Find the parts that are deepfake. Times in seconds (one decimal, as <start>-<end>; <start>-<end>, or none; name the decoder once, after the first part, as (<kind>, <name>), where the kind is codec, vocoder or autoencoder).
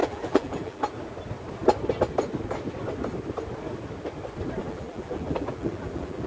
0.0-0.8 (vocoder, BigVGAN v2); 4.6-6.3